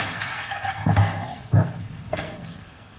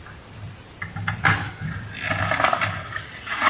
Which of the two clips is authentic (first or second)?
second